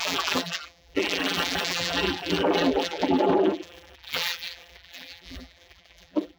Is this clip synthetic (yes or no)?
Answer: yes